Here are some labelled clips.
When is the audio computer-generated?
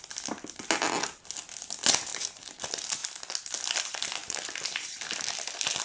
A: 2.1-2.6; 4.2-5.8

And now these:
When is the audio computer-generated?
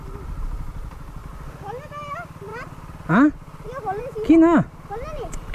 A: 2.5-4.0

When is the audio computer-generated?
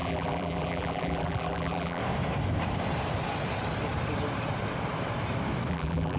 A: 0.0-2.0; 5.7-6.2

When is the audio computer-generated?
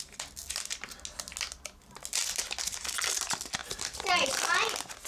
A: none